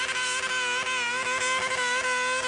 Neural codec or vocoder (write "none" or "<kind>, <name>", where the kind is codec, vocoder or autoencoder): none